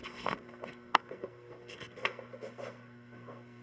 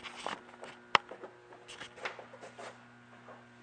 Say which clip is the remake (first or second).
first